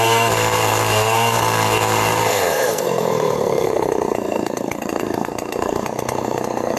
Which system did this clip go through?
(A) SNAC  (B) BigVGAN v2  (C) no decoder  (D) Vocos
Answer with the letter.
A